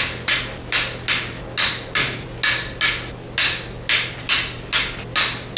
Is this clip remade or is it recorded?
recorded